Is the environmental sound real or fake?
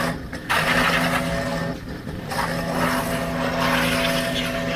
real